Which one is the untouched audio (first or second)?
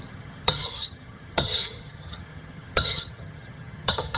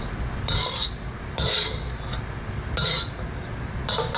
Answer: second